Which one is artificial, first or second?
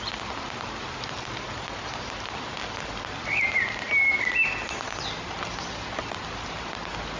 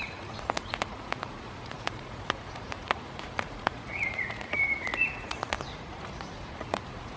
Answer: second